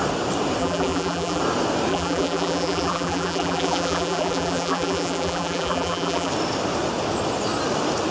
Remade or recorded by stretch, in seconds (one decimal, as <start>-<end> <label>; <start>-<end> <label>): 0.0-0.6 recorded; 0.6-1.4 remade; 1.4-1.9 recorded; 1.9-6.3 remade; 6.3-8.1 recorded